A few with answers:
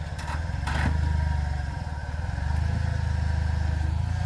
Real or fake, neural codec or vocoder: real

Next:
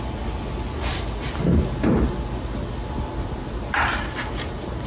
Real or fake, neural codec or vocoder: real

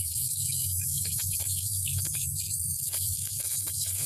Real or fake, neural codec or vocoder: fake, codec, SNAC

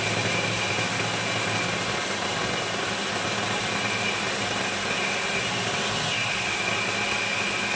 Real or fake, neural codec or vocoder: real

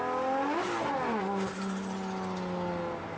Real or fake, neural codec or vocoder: real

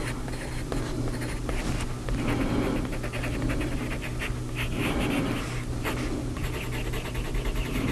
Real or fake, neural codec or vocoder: real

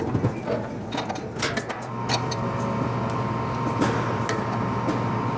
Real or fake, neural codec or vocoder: real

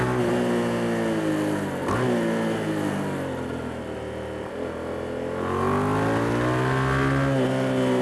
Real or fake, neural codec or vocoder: real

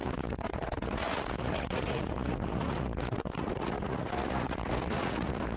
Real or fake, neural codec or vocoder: fake, vocoder, Vocos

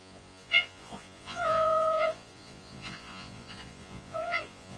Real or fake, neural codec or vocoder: fake, vocoder, Vocos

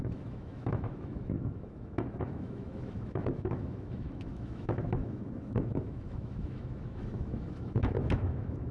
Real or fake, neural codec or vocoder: fake, autoencoder, DAC-VAE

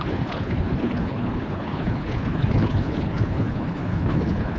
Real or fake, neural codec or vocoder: fake, codec, HILCodec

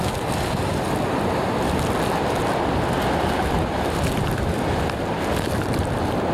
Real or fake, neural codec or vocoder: real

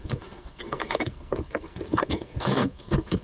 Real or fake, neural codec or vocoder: fake, codec, SNAC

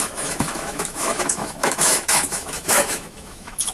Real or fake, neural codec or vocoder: fake, autoencoder, DAC-VAE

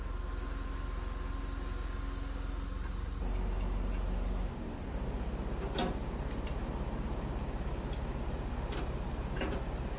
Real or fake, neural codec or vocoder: real